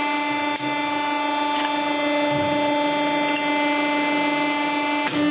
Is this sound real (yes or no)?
yes